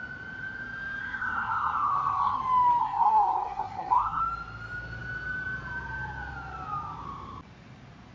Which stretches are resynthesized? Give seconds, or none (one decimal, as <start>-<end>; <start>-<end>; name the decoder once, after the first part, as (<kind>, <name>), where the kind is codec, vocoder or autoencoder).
1.0-2.4 (codec, SNAC); 2.8-4.2